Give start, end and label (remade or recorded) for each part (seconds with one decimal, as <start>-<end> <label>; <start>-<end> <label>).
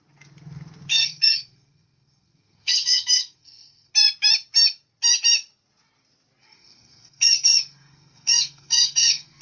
0.0-0.9 recorded; 0.9-3.9 remade; 3.9-6.4 recorded; 6.4-9.4 remade